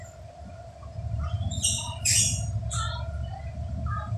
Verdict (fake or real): real